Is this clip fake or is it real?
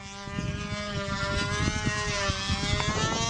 real